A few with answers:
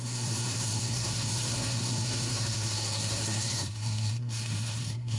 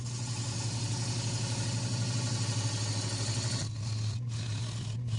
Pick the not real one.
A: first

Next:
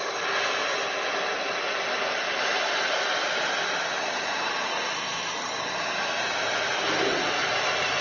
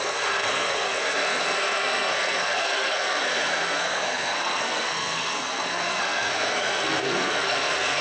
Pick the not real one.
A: second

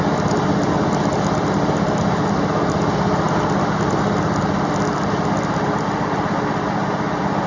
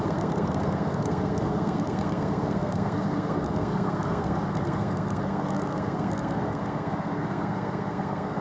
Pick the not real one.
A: second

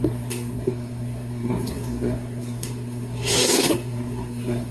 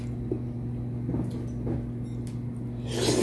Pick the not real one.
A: first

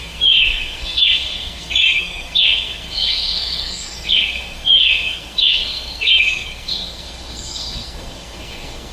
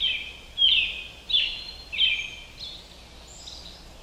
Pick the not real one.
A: first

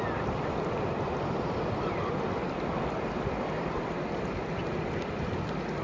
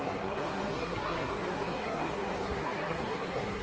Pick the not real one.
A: second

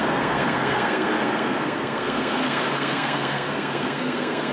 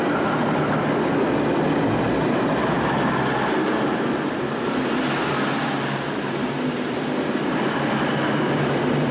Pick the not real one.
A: first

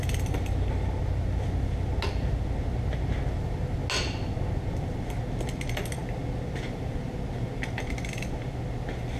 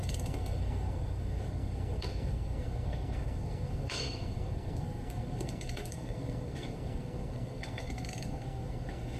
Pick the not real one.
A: second